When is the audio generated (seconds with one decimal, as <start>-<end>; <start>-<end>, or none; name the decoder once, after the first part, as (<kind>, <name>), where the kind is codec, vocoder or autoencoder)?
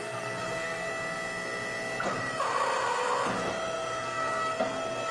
0.0-0.9 (codec, SNAC); 4.0-5.1